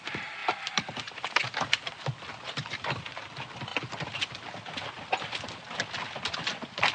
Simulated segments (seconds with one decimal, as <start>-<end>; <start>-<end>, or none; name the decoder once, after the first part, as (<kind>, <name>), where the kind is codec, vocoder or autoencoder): 0.4-1.9 (vocoder, BigVGAN v2); 2.3-3.0